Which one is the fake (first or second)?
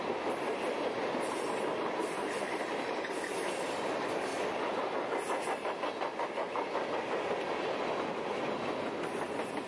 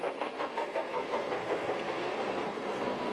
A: second